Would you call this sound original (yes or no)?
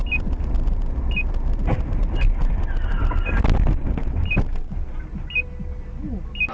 yes